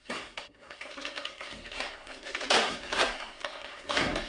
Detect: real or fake fake